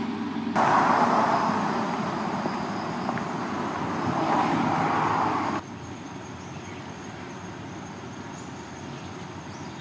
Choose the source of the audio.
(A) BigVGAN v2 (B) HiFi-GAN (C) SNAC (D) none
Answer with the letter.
D